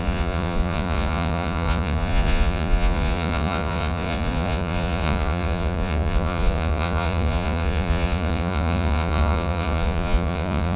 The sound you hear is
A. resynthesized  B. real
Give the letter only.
A